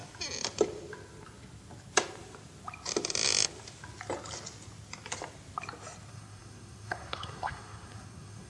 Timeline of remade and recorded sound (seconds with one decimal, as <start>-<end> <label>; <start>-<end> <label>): 0.0-6.1 recorded; 6.1-8.5 remade